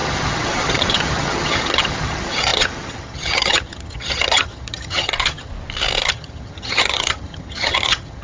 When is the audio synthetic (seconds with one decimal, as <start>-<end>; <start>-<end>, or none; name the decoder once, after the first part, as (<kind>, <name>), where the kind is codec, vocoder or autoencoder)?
0.0-5.5 (vocoder, HiFi-GAN); 6.1-8.2